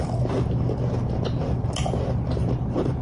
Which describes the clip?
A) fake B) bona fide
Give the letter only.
B